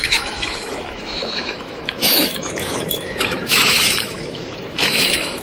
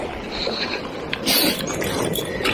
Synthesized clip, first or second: first